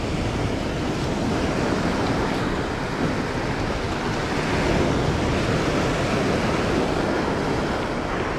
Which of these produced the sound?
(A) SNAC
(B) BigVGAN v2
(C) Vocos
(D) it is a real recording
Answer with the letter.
D